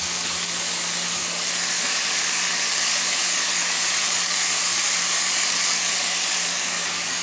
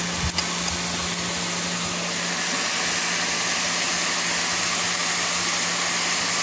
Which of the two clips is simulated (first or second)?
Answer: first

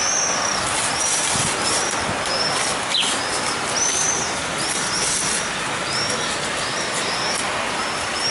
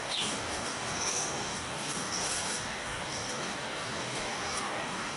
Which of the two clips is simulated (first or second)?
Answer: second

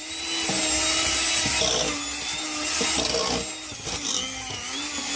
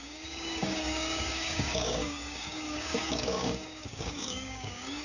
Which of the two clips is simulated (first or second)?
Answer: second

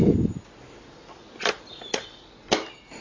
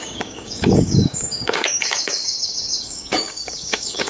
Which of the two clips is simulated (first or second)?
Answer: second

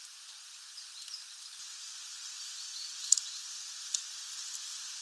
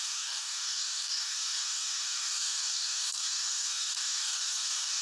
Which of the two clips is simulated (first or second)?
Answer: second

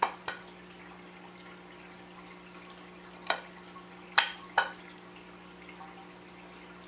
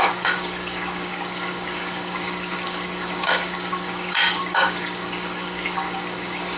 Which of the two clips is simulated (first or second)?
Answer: second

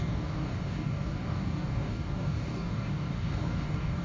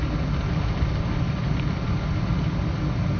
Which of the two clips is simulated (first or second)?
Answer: first